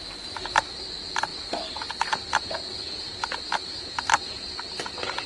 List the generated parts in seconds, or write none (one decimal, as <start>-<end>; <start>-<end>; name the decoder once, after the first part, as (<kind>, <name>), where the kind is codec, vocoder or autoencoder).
3.6-4.3 (vocoder, BigVGAN v2)